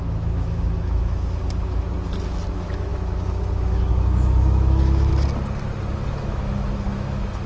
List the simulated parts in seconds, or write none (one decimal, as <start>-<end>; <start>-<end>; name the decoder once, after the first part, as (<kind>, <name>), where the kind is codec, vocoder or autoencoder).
0.0-1.9 (autoencoder, DAC-VAE); 2.5-5.1; 6.1-7.5